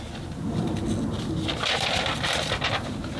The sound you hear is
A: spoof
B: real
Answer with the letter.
B